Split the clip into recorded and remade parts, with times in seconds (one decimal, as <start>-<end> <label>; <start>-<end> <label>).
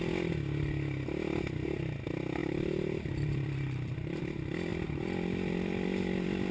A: 0.0-2.4 recorded; 2.4-4.2 remade; 4.2-4.7 recorded; 4.7-6.5 remade